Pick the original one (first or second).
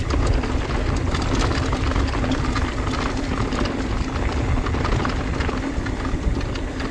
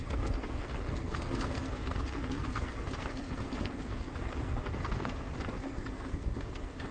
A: first